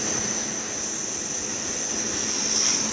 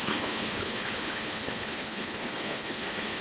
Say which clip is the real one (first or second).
first